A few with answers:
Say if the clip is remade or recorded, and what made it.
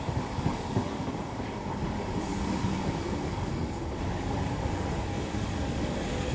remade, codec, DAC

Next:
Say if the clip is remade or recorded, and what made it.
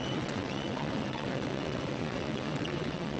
remade, vocoder, WaveNeXt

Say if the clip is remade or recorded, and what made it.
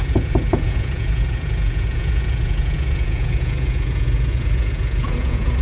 remade, vocoder, Vocos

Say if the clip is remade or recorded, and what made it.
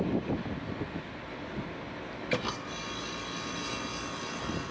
recorded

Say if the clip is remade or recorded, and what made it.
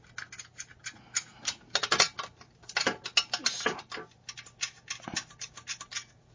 recorded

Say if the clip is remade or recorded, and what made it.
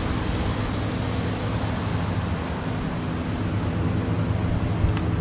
recorded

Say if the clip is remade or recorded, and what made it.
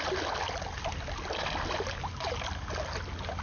recorded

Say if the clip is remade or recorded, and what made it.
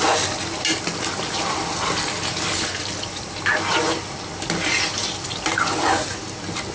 recorded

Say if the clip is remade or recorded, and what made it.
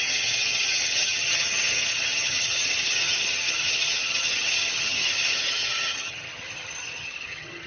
remade, vocoder, HiFi-GAN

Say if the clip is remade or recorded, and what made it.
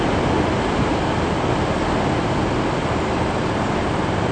recorded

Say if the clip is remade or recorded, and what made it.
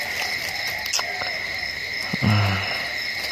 recorded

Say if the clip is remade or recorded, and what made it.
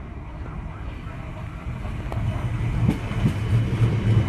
recorded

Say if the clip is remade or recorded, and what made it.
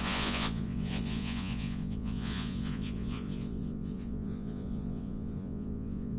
remade, vocoder, Vocos